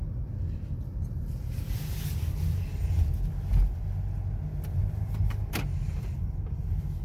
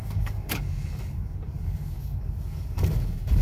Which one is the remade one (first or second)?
second